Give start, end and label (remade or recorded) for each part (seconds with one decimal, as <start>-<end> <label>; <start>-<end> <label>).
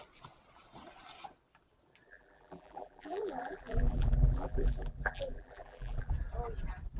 0.0-2.1 recorded; 2.1-6.1 remade; 6.1-7.0 recorded